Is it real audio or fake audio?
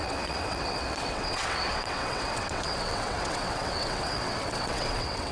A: fake